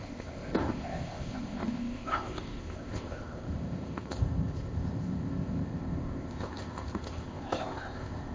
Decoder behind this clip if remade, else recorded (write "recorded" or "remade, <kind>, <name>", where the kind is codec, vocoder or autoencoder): remade, codec, ZipCodec